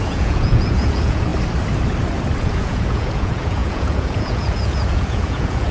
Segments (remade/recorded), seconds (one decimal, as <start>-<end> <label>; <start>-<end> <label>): 0.0-1.3 remade; 1.3-2.4 recorded; 2.4-5.7 remade